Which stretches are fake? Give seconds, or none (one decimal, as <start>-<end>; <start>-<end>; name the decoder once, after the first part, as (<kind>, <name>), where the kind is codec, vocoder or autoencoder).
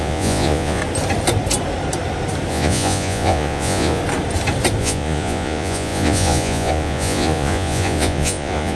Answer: 0.0-0.8 (vocoder, Vocos); 2.5-4.0; 4.8-8.8